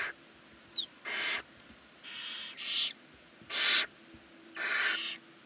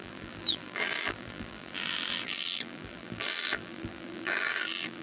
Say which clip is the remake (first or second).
second